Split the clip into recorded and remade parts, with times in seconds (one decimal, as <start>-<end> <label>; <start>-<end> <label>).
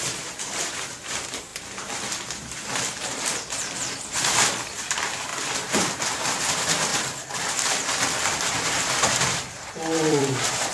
0.0-5.3 remade; 5.3-6.5 recorded; 6.5-6.9 remade; 6.9-9.1 recorded; 9.1-10.7 remade